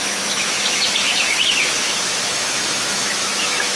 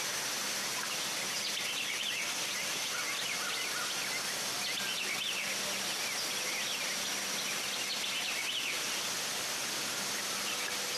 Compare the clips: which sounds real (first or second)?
second